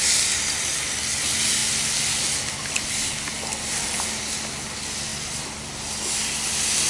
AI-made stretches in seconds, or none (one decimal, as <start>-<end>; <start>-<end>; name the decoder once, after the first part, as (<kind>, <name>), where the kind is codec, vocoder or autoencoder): 0.0-0.7 (vocoder, BigVGAN v2)